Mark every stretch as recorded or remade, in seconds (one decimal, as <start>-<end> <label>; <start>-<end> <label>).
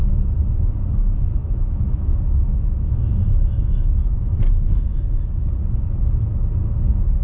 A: 0.0-1.4 recorded; 1.4-4.3 remade; 4.3-7.2 recorded